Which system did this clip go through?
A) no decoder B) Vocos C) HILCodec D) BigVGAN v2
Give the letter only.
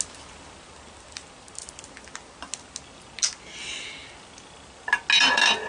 A